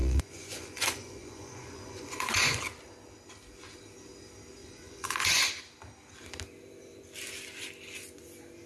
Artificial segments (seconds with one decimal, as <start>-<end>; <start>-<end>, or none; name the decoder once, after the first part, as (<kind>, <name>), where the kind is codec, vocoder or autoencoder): 0.0-2.6 (vocoder, Vocos); 4.6-5.5